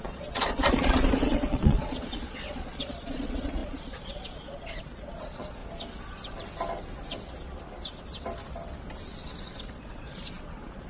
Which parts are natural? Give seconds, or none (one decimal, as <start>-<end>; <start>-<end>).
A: 5.6-9.6